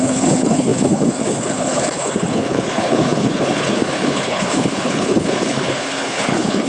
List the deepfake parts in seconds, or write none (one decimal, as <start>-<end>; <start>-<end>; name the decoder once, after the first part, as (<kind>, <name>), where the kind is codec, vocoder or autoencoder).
0.0-6.7 (codec, HILCodec)